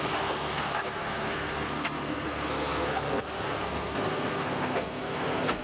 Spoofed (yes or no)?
yes